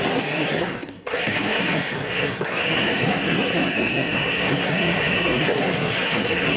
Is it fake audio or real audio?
fake